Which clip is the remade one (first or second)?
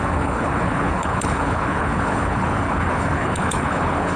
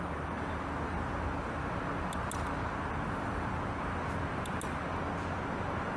first